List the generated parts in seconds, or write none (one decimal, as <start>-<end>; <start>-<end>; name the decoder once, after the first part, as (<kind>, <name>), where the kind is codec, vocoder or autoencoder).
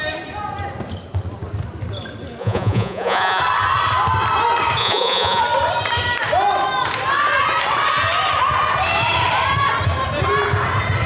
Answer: 2.4-3.4 (vocoder, Vocos); 4.8-5.4